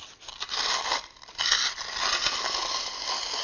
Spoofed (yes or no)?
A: no